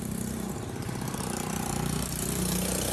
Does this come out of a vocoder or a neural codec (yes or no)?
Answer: yes